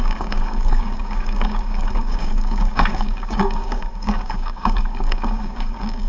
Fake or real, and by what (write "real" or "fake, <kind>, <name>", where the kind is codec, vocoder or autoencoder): fake, codec, DAC